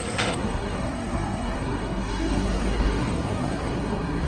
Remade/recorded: remade